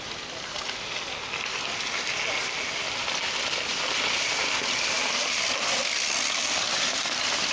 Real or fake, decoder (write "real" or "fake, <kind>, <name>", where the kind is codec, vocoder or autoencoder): real